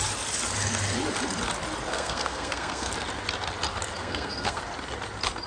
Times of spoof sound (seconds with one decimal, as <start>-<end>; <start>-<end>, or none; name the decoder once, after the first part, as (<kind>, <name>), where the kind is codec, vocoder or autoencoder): 1.9-2.9 (codec, SNAC); 4.0-4.6